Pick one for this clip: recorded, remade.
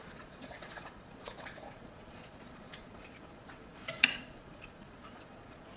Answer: remade